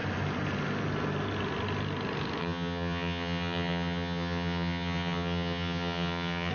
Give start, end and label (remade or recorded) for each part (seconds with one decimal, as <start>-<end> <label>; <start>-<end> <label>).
0.0-2.4 recorded; 2.4-6.5 remade